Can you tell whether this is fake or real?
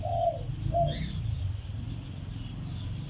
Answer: real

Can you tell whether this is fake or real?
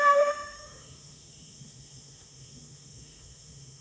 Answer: fake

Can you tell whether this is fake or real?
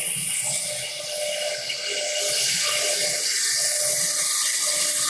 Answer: real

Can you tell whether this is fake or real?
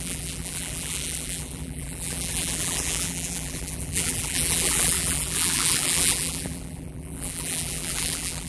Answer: fake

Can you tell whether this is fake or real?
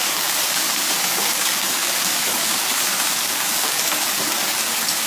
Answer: fake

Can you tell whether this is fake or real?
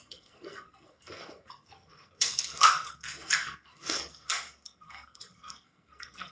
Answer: fake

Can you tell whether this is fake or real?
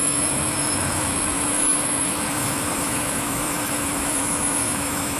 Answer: fake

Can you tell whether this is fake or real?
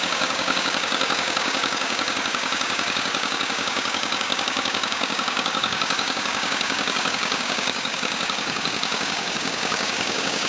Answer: fake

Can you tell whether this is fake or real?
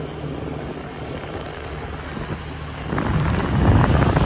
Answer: real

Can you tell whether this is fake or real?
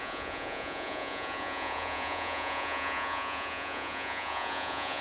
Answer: fake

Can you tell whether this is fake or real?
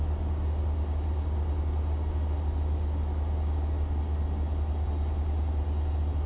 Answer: real